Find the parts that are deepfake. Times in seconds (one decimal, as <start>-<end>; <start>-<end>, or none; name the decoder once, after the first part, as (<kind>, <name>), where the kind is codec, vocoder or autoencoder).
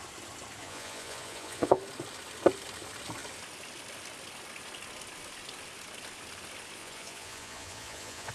0.6-1.8 (vocoder, Vocos); 6.8-8.3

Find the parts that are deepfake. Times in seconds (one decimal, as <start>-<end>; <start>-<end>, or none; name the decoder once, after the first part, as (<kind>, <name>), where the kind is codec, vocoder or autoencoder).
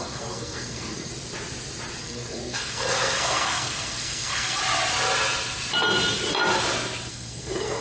0.0-1.1 (codec, SNAC); 2.0-4.6; 7.1-7.8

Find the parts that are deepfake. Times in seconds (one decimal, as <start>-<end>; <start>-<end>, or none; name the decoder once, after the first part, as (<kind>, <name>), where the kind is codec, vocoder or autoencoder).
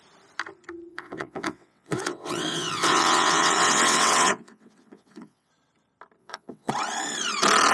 0.9-5.5 (vocoder, WaveNeXt); 6.2-6.7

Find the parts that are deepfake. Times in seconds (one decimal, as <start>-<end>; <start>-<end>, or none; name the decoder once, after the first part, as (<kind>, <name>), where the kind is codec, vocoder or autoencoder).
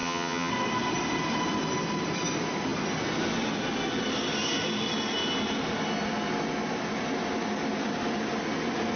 0.0-0.5 (vocoder, HiFi-GAN)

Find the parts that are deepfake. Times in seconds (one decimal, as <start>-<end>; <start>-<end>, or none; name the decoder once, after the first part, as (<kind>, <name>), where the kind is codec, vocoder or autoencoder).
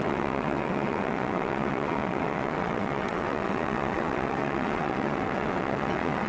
0.0-6.3 (vocoder, WaveNeXt)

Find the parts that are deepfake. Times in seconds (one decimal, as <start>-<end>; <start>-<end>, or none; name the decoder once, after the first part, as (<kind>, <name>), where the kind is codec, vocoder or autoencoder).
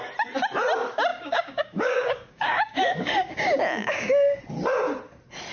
1.1-4.4 (codec, DAC)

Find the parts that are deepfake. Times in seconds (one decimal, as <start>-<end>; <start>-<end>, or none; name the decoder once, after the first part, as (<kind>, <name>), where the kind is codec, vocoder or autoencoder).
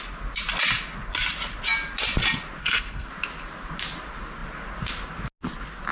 2.6-3.1 (codec, SNAC)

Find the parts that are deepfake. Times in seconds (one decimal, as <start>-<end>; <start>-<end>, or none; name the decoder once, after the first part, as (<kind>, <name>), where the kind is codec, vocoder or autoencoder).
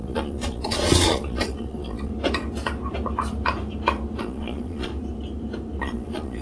0.0-2.1 (vocoder, Vocos); 4.2-4.9; 5.8-6.4